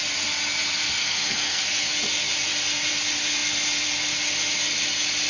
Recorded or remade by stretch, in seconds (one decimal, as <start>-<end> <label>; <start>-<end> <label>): 0.0-1.0 recorded; 1.0-1.6 remade; 1.6-5.3 recorded